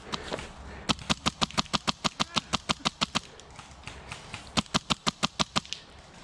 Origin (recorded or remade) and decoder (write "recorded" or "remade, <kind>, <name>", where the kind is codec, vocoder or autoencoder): recorded